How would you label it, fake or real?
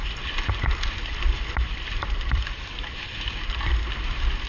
real